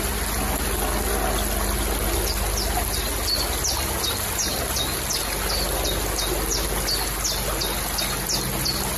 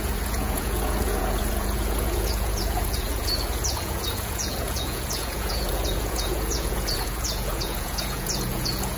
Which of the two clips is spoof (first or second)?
second